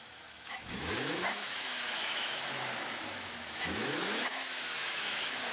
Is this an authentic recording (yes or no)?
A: no